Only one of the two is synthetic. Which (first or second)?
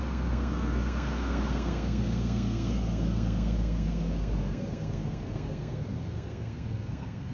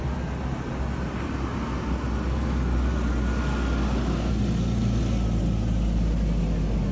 first